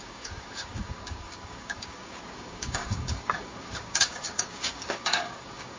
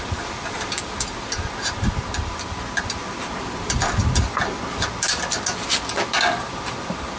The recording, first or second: second